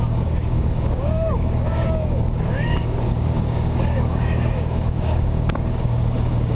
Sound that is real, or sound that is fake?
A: fake